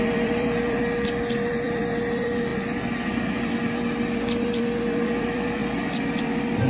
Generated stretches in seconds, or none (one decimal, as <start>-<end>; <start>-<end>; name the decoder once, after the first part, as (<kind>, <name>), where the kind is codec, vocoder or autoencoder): 0.0-0.8 (vocoder, BigVGAN v2); 1.5-5.6; 6.2-6.7